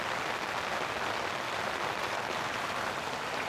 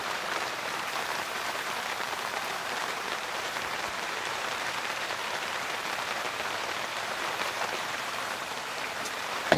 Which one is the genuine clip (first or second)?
first